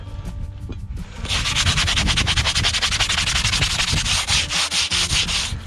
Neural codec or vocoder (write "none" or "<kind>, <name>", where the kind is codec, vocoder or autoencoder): none